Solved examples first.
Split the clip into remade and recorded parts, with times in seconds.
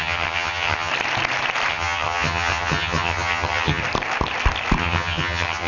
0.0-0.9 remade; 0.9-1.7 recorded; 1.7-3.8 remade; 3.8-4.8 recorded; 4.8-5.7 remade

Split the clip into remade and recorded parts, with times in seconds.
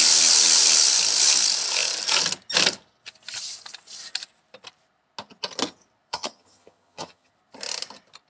0.0-6.1 recorded; 6.1-7.3 remade; 7.3-8.3 recorded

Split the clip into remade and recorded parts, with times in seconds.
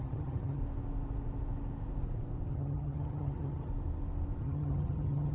0.0-0.6 remade; 0.6-2.5 recorded; 2.5-3.7 remade; 3.7-4.4 recorded; 4.4-5.3 remade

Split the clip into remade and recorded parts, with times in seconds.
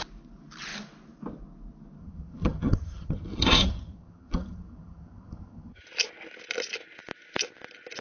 0.0-2.0 recorded; 2.0-5.8 remade; 5.8-8.0 recorded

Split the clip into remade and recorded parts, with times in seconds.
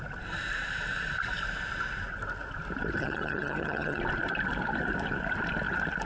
0.0-3.0 recorded; 3.0-4.0 remade; 4.0-6.1 recorded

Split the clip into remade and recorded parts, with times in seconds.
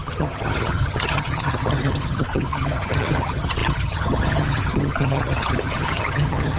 0.0-6.6 remade